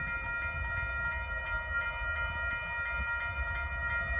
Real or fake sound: real